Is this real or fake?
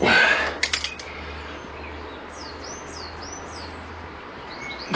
real